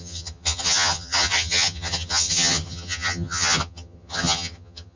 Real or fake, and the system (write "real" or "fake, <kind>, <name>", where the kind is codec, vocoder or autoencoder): fake, vocoder, HiFi-GAN